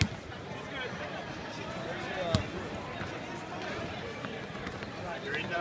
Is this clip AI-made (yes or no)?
no